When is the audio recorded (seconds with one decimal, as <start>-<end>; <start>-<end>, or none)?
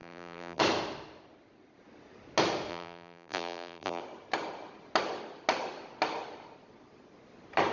0.6-2.7; 4.0-7.7